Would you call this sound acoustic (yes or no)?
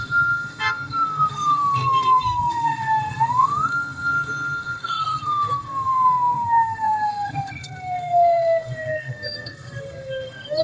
no